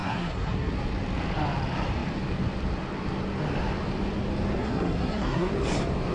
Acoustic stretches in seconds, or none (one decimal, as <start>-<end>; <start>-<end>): 0.7-4.6; 5.5-6.1